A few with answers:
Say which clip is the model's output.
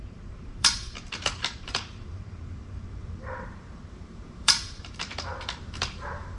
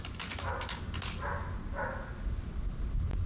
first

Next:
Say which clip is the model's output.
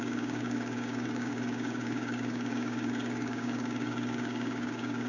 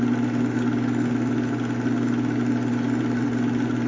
first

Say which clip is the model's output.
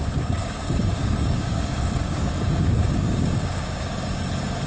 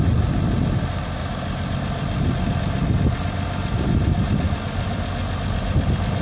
first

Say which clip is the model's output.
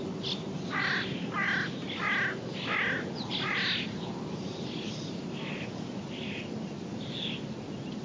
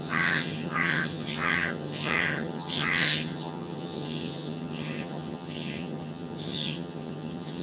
second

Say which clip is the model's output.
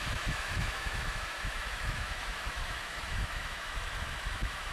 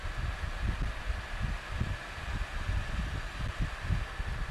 first